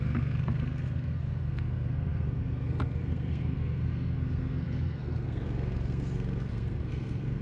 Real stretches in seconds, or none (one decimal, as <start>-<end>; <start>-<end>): none

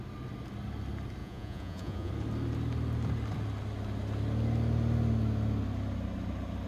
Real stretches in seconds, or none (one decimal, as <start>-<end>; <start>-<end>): 0.0-1.2; 2.1-6.7

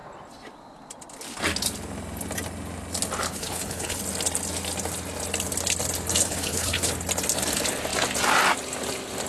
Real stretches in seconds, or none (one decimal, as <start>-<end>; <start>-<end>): 0.0-3.3; 4.0-6.2; 6.9-9.3

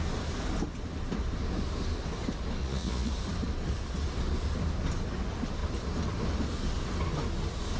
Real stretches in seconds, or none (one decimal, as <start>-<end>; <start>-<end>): 0.0-2.6; 3.1-7.8

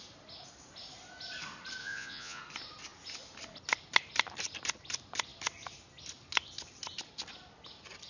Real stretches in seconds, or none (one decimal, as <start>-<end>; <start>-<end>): 0.0-1.8; 2.4-8.1

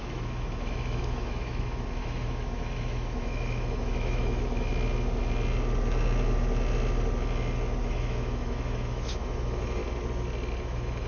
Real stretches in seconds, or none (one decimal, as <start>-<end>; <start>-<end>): 4.7-7.8; 9.8-10.6